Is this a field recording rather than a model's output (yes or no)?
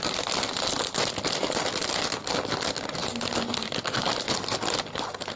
yes